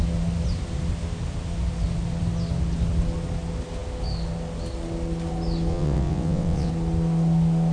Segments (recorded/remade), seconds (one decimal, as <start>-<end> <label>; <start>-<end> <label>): 0.0-5.7 recorded; 5.7-6.7 remade; 6.7-7.7 recorded